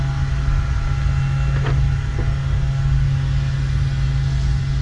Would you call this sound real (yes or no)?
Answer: yes